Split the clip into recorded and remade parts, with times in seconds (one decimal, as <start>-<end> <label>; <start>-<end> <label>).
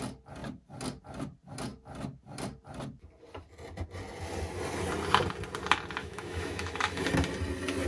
0.0-6.0 recorded; 6.0-7.0 remade; 7.0-7.9 recorded